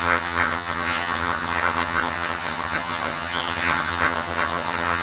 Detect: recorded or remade remade